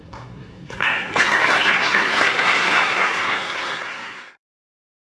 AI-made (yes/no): yes